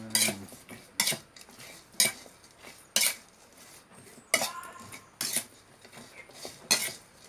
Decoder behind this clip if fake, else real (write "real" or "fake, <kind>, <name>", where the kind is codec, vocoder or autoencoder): real